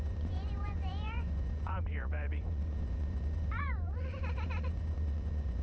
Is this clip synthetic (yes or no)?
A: yes